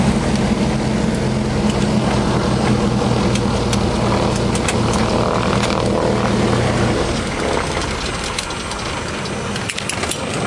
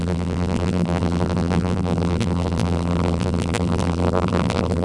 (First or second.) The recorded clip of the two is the first